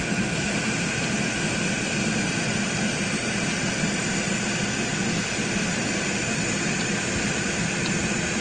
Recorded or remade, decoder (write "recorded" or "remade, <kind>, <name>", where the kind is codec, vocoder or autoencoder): remade, vocoder, BigVGAN v2